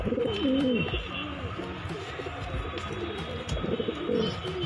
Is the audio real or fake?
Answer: real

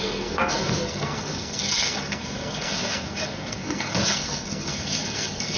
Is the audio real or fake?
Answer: fake